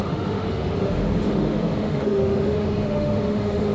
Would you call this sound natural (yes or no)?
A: no